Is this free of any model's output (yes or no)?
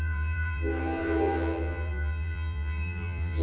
no